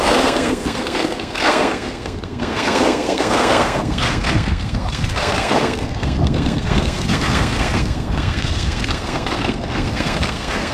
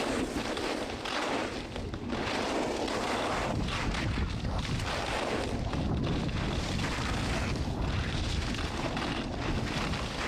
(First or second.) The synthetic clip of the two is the first